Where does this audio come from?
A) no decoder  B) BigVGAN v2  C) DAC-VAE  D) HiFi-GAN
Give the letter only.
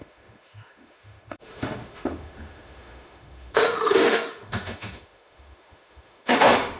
C